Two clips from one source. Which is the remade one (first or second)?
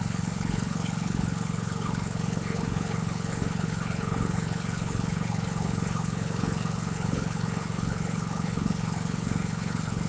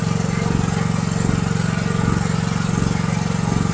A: first